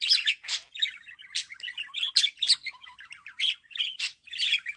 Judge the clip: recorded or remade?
recorded